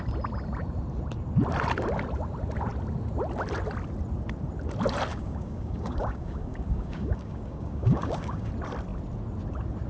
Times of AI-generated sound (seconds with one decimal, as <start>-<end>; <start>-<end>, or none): 5.1-8.5

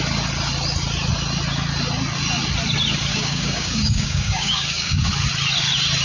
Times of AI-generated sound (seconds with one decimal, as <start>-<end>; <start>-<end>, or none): 3.1-5.1

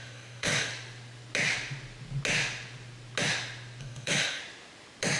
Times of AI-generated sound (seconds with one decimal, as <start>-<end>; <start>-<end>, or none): 0.0-0.7; 3.8-4.4

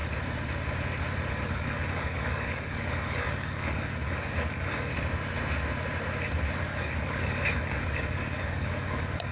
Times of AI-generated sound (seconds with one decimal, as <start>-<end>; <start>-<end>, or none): 1.3-4.9; 6.6-9.3

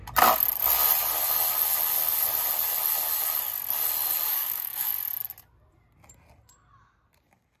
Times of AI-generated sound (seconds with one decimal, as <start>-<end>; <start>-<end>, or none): 4.3-4.9

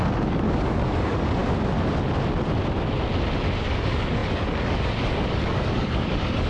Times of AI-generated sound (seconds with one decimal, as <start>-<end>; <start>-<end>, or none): 0.0-1.4; 3.6-6.5

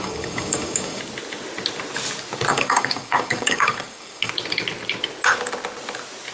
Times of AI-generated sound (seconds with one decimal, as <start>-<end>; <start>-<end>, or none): 0.0-1.0; 2.5-4.3